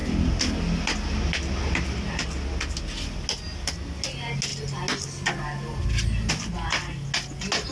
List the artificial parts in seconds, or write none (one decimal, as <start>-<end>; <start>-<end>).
none